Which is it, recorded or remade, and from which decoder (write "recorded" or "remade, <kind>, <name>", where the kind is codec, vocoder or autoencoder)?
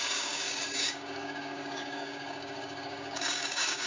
remade, codec, DAC